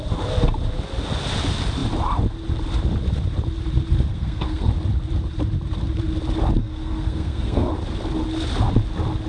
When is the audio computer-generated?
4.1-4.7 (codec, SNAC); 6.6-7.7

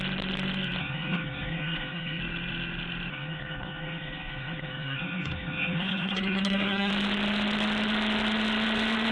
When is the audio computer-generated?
0.8-2.2 (codec, SNAC); 3.1-6.9